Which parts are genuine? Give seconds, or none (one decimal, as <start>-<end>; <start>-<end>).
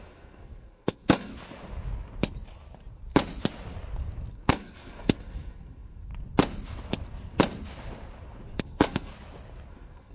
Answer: 1.3-4.3; 6.1-8.6; 9.1-9.7